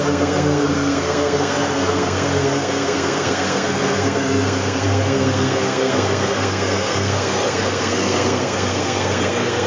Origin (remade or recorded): remade